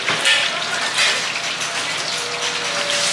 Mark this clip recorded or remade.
recorded